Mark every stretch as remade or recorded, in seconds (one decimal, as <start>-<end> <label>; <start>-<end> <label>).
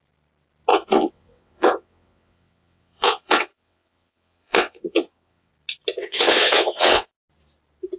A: 0.0-0.7 recorded; 0.7-5.5 remade; 5.5-6.0 recorded; 6.0-7.1 remade; 7.1-8.0 recorded